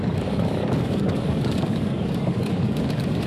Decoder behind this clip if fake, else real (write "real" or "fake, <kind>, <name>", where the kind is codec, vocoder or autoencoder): fake, codec, DAC